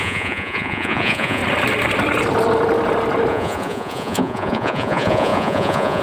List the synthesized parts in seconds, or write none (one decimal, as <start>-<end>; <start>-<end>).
0.0-1.4; 3.3-6.0